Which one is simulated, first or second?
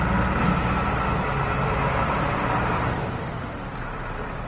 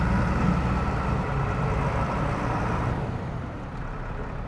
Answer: second